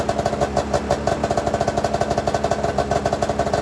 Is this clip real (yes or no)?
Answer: yes